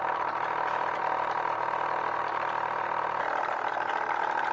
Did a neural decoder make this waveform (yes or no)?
no